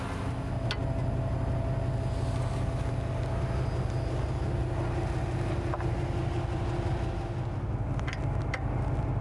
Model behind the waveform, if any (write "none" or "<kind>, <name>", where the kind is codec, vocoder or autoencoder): none